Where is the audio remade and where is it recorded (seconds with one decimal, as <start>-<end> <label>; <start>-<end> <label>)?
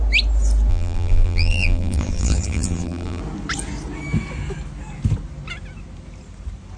0.0-0.7 recorded; 0.7-3.2 remade; 3.2-6.8 recorded